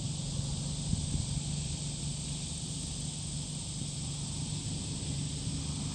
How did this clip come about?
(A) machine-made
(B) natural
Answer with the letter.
B